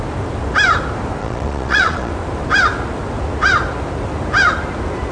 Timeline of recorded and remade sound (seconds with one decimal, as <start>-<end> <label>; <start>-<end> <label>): 0.0-1.2 recorded; 1.2-2.1 remade; 2.1-5.1 recorded